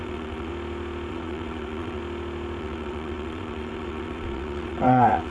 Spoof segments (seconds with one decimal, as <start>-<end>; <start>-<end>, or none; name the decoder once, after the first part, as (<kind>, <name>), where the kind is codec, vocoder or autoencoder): 0.0-0.5 (vocoder, WaveNeXt); 1.1-2.0; 2.6-5.3